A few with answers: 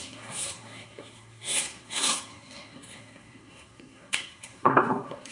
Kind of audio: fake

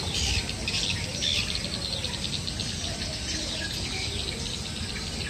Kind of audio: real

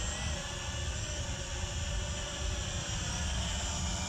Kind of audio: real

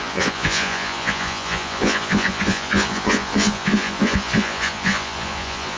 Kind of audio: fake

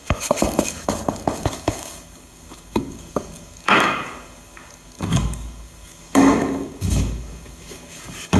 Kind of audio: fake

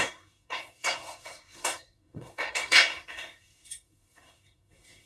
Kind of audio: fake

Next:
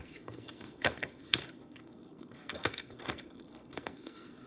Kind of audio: fake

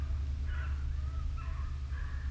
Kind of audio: real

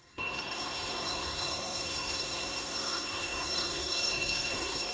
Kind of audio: fake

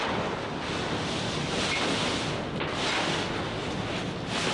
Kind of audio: real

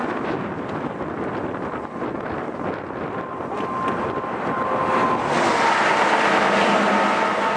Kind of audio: real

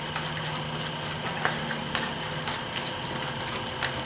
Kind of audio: real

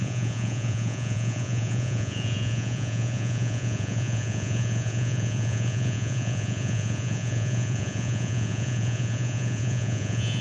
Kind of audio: fake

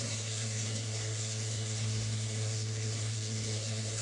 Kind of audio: fake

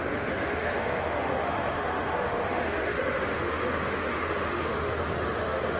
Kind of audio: fake